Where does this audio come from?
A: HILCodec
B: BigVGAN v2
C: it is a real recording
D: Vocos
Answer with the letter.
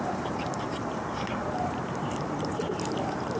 B